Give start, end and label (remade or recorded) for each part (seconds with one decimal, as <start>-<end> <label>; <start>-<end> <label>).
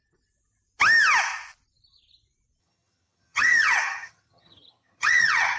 0.0-2.6 recorded; 2.6-5.6 remade